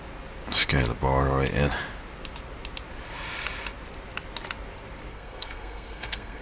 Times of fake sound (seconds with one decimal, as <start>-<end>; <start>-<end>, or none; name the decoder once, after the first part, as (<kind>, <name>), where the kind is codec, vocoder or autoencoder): 5.1-6.4 (codec, SNAC)